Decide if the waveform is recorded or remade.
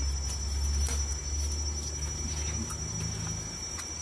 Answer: recorded